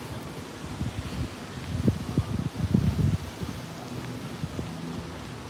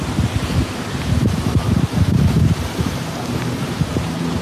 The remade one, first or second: second